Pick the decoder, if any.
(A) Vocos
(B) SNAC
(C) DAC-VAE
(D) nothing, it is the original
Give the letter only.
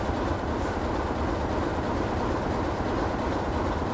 D